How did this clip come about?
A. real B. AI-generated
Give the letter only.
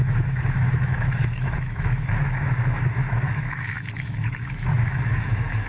B